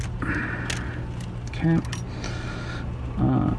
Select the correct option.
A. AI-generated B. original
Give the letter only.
B